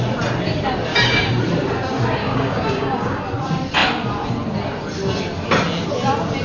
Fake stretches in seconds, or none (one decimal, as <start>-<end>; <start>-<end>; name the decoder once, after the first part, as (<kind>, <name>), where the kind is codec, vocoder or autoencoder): 0.9-1.4 (codec, DAC); 2.2-3.2